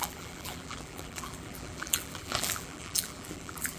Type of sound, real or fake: fake